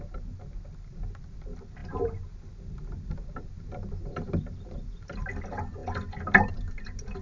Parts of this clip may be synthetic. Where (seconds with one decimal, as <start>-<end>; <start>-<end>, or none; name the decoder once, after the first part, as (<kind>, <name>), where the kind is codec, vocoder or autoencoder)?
none